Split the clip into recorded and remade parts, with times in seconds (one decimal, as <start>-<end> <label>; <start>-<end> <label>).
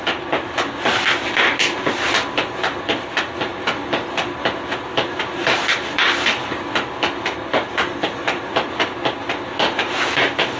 0.0-10.6 recorded